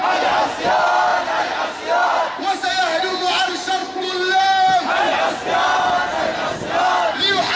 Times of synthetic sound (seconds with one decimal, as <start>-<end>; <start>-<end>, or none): none